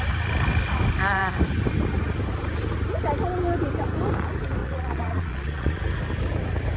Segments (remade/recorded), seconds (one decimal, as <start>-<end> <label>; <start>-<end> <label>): 0.0-4.6 recorded; 4.6-5.8 remade; 5.8-6.8 recorded